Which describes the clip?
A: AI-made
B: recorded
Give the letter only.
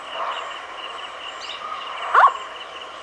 A